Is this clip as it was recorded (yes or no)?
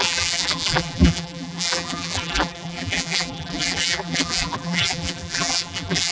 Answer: no